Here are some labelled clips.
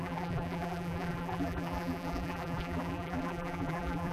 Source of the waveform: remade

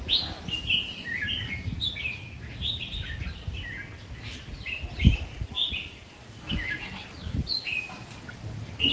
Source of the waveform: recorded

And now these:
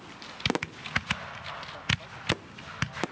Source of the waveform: recorded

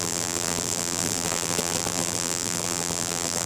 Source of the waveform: remade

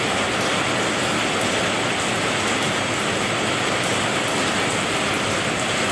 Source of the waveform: recorded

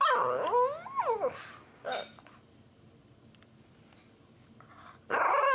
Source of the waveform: recorded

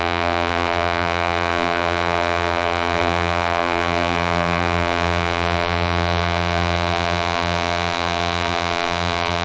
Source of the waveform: remade